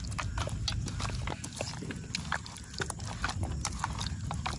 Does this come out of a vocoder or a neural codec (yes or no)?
no